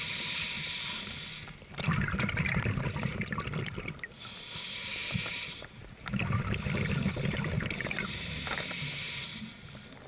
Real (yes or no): yes